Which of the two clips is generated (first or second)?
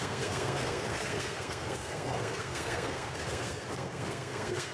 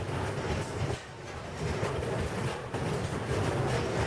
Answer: first